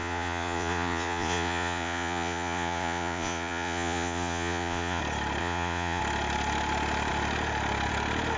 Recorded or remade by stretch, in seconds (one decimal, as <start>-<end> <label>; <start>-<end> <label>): 0.0-5.0 remade; 5.0-5.4 recorded; 5.4-6.0 remade; 6.0-8.4 recorded